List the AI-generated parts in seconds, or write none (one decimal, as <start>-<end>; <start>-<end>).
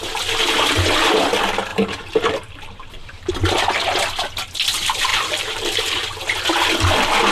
1.7-3.3; 5.1-6.2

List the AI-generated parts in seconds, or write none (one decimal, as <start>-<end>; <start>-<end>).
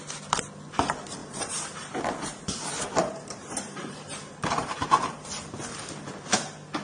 1.2-5.3